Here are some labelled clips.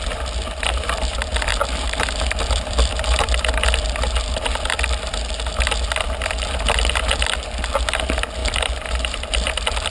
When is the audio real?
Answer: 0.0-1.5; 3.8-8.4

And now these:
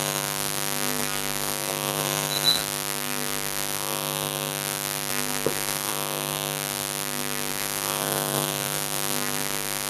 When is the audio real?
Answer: 2.6-5.1; 5.9-7.5